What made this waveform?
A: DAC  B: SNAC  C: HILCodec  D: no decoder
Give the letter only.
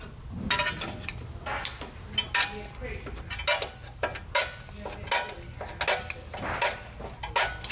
D